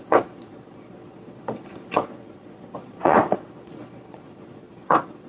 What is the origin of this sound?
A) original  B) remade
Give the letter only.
B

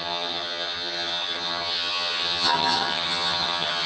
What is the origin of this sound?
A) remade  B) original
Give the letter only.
A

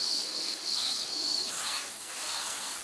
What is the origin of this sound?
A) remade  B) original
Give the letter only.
A